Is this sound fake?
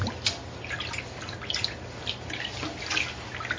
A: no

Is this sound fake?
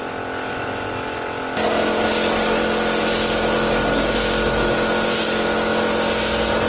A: no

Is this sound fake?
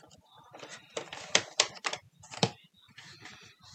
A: no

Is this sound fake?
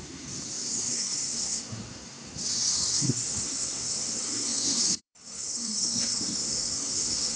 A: yes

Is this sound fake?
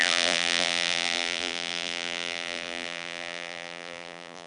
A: yes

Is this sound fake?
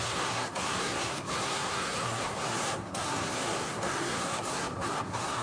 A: yes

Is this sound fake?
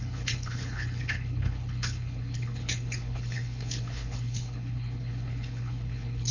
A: yes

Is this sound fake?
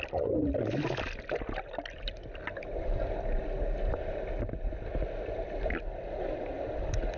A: no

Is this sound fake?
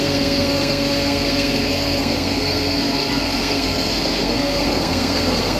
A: yes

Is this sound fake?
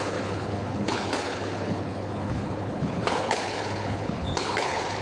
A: yes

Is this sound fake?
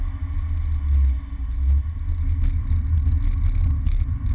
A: no